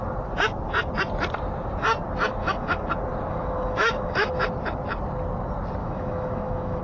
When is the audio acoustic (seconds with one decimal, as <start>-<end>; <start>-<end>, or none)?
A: 0.0-2.4; 2.9-3.3; 4.4-5.8